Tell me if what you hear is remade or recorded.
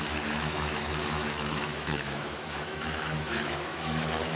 remade